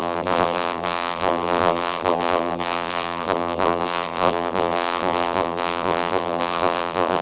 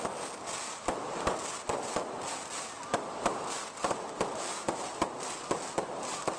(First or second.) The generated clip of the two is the first